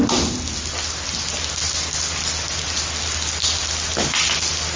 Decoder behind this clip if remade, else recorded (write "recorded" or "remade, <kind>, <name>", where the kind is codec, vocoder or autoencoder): recorded